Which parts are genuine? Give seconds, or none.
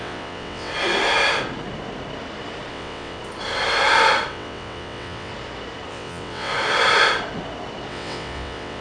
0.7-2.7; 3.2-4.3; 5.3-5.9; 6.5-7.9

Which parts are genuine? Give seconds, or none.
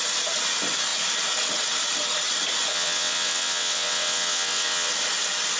0.0-2.7; 4.9-5.6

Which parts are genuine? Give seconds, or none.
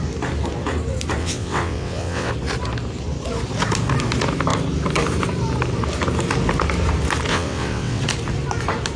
0.0-1.2; 2.3-7.3; 8.0-9.0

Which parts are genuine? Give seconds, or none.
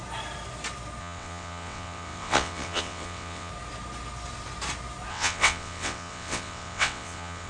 0.0-1.0; 3.5-5.1